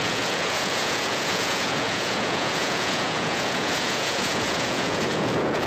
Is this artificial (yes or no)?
yes